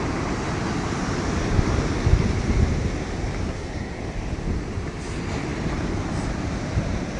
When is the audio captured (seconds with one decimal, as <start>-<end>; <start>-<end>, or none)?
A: 0.0-3.4; 4.0-7.2